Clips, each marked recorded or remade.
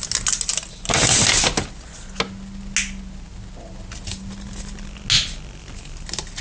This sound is recorded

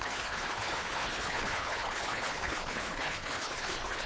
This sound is remade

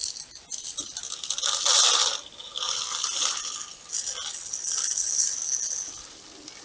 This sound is recorded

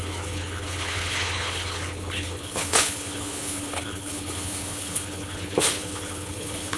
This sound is remade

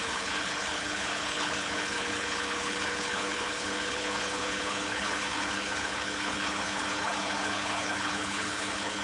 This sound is remade